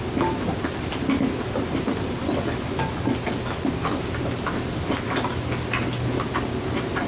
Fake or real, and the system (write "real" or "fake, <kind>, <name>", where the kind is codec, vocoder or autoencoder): real